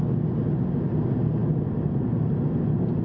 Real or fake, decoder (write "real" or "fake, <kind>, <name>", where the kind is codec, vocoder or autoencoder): real